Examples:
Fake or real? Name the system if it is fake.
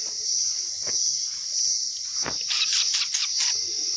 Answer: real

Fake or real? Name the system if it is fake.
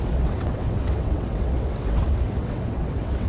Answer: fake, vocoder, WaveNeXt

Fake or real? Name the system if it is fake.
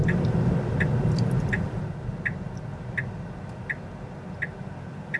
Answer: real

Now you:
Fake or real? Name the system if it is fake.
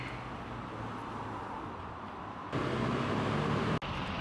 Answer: real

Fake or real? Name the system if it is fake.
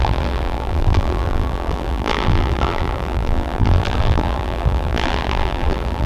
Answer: fake, vocoder, BigVGAN v2